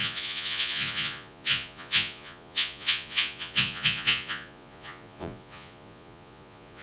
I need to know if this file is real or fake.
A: fake